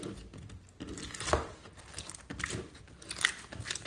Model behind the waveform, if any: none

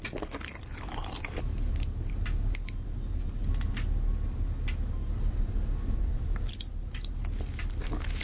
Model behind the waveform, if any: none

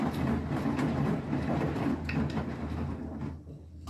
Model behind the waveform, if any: none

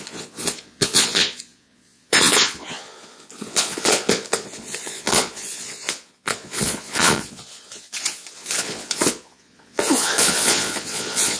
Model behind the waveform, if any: vocoder, Vocos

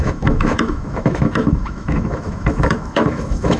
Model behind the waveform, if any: autoencoder, DAC-VAE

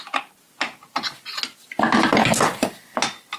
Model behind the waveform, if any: none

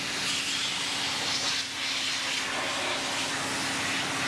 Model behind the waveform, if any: none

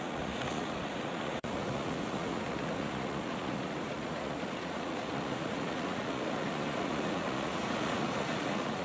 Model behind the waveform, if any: vocoder, Vocos